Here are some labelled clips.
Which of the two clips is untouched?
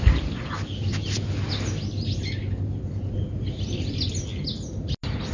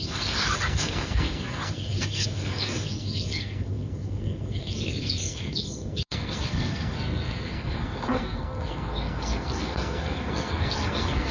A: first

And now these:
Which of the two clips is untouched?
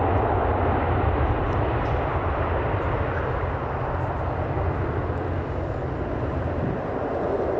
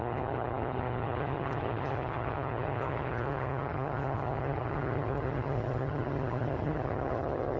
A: first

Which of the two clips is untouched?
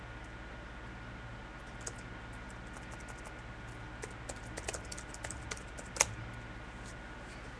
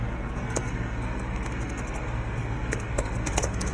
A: first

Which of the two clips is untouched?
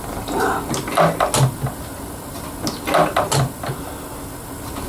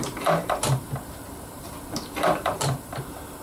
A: first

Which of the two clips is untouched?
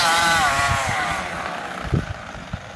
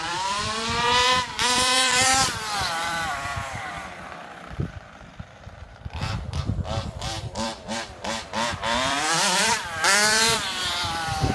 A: first